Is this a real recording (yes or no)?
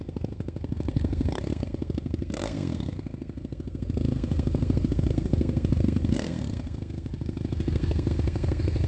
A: no